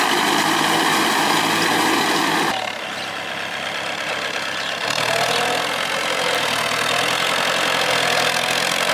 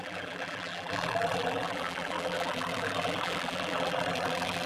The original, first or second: first